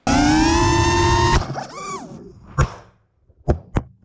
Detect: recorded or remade recorded